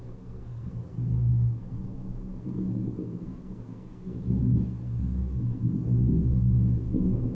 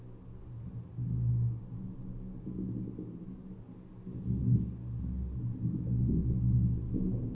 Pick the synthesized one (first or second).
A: first